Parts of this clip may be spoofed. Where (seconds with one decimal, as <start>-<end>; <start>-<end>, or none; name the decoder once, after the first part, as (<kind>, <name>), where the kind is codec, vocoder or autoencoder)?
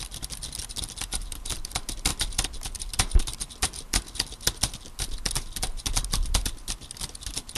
none